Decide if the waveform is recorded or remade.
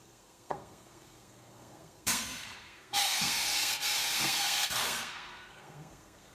remade